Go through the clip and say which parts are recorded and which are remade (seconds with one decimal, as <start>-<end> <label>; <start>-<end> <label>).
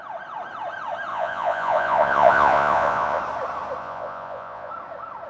0.0-1.1 recorded; 1.1-3.2 remade; 3.2-3.8 recorded; 3.8-4.7 remade; 4.7-5.3 recorded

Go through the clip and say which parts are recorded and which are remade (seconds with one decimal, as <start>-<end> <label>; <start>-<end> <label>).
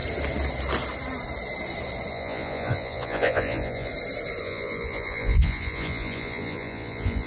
0.0-2.1 recorded; 2.1-3.9 remade; 3.9-4.4 recorded; 4.4-7.3 remade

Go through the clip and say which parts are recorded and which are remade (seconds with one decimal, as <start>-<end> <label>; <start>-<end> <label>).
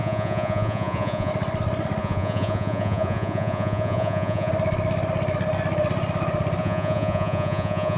0.0-1.3 remade; 1.3-2.0 recorded; 2.0-4.5 remade; 4.5-6.6 recorded; 6.6-8.0 remade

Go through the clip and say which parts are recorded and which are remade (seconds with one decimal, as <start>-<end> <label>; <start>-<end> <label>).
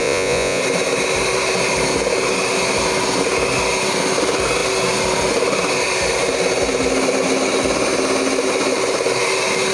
0.0-0.6 remade; 0.6-9.7 recorded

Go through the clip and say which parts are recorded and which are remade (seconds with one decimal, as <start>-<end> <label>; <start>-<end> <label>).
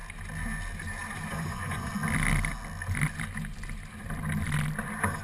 0.0-1.3 recorded; 1.3-1.9 remade; 1.9-5.2 recorded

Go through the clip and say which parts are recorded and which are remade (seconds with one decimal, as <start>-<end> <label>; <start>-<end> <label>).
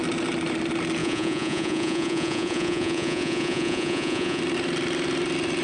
0.0-1.0 recorded; 1.0-4.4 remade; 4.4-5.6 recorded